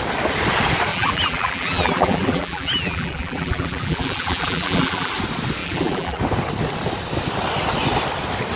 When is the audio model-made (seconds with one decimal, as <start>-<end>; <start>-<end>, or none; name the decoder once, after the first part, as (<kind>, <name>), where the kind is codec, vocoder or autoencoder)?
0.9-5.1 (vocoder, BigVGAN v2); 5.6-6.2